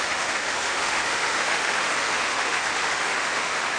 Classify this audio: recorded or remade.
remade